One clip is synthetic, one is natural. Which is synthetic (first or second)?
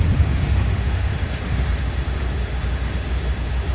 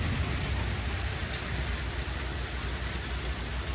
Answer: first